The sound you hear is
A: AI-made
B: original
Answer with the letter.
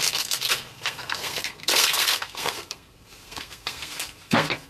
A